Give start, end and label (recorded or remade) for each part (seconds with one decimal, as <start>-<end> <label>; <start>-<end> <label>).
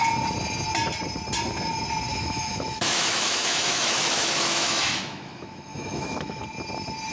0.0-2.1 recorded; 2.1-6.4 remade; 6.4-7.1 recorded